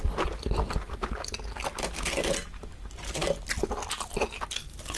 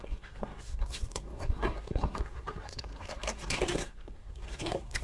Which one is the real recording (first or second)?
first